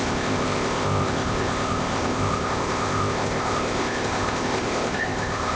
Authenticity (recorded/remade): remade